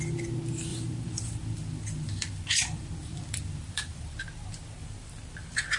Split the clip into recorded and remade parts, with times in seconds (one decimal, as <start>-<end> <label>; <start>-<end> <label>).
0.0-0.7 recorded; 0.7-4.2 remade; 4.2-4.8 recorded; 4.8-5.8 remade